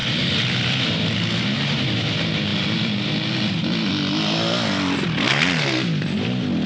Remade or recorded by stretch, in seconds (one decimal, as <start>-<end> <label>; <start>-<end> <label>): 0.0-1.1 remade; 1.1-6.7 recorded